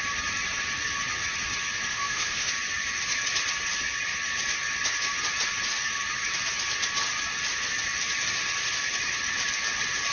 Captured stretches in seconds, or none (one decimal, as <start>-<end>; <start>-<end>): 0.0-1.9; 2.5-10.1